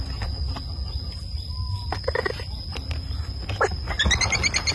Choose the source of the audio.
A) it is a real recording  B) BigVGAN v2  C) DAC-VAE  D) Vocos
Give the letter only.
A